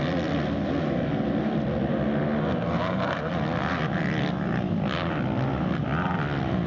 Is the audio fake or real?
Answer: real